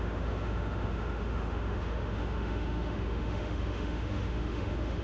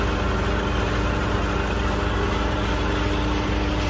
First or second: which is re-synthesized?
first